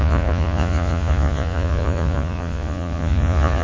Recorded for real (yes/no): no